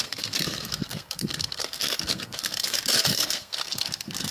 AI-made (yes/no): yes